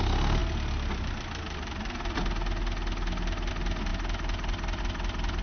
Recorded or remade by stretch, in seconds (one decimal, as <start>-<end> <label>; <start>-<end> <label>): 0.0-5.4 recorded